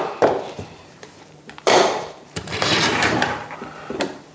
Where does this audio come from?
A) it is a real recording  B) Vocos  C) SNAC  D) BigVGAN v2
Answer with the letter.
D